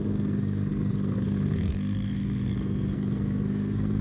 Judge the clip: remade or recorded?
remade